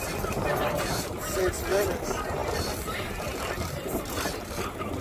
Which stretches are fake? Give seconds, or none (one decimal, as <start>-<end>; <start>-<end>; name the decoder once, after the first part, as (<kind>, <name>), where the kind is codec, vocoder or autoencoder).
0.0-5.0 (vocoder, BigVGAN v2)